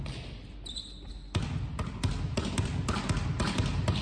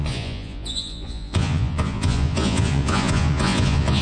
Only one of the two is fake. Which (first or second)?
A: second